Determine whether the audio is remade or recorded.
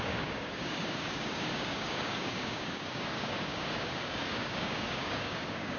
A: remade